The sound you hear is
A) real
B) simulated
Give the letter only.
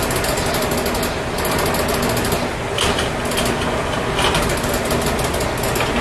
A